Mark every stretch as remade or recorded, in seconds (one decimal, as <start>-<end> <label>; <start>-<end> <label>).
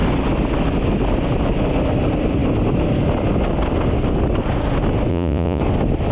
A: 0.0-5.1 recorded; 5.1-5.6 remade; 5.6-6.1 recorded